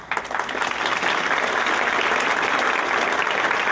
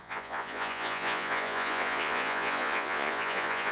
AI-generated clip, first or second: second